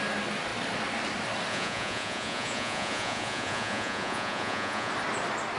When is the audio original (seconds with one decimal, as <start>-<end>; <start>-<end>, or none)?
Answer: 0.0-1.5; 4.9-5.6